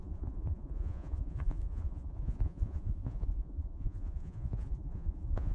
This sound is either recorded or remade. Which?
remade